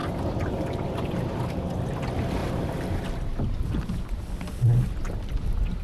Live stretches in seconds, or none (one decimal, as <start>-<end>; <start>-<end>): 1.8-2.4; 3.0-5.8